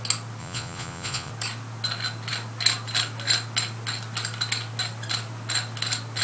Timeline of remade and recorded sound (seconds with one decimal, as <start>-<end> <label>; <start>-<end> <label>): 0.0-0.4 recorded; 0.4-1.3 remade; 1.3-6.2 recorded

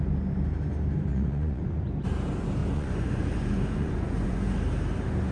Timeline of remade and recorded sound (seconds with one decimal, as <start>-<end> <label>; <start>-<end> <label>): 0.0-1.1 recorded; 1.1-1.8 remade; 1.8-2.6 recorded; 2.6-4.5 remade; 4.5-5.3 recorded

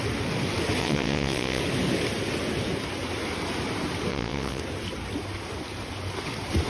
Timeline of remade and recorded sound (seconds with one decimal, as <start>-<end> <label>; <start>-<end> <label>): 0.0-0.8 recorded; 0.8-1.6 remade; 1.6-4.1 recorded; 4.1-4.6 remade; 4.6-6.7 recorded

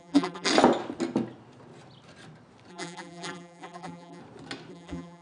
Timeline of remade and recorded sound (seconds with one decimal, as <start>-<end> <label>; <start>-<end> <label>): 0.0-0.5 remade; 0.5-2.7 recorded; 2.7-4.2 remade; 4.2-4.7 recorded; 4.7-5.2 remade

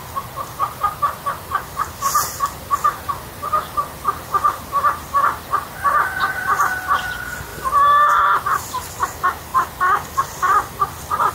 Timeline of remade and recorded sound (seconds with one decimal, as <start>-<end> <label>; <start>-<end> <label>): 0.0-9.5 recorded; 9.5-11.3 remade

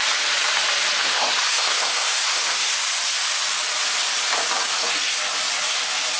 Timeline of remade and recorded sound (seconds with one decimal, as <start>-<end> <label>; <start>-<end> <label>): 0.0-1.0 recorded; 1.0-2.7 remade; 2.7-6.2 recorded

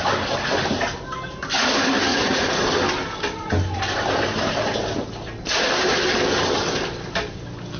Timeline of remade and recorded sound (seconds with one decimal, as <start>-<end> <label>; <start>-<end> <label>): 0.0-2.1 recorded; 2.1-2.6 remade; 2.6-7.8 recorded